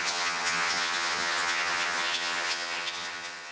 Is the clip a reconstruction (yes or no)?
yes